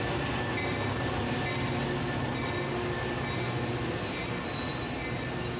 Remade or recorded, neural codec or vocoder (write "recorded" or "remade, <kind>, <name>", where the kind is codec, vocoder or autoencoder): recorded